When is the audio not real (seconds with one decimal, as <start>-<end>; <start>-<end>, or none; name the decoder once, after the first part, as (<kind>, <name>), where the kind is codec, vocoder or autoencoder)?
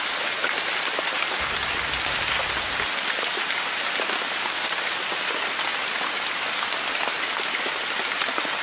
none